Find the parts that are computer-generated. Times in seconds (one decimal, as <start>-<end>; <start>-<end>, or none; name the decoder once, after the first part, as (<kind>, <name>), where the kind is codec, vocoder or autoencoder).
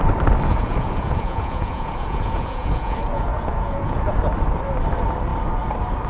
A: 0.5-4.2 (vocoder, Vocos)